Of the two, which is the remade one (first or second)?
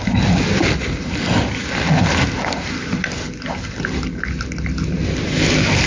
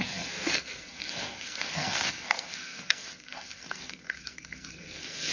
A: second